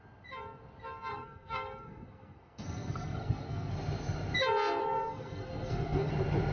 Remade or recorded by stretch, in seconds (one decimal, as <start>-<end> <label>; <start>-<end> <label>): 0.0-1.1 recorded; 1.1-3.7 remade; 3.7-4.8 recorded; 4.8-6.1 remade; 6.1-6.5 recorded